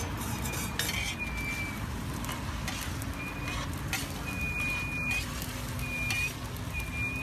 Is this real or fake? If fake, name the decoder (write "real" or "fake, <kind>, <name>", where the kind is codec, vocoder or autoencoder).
real